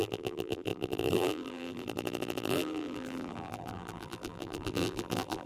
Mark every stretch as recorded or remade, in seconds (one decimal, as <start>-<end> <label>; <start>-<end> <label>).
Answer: 0.0-5.5 remade